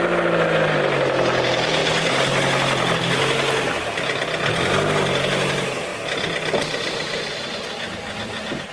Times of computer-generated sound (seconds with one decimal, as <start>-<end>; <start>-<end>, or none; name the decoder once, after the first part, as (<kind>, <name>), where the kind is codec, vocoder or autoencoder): none